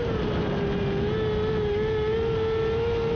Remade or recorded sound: recorded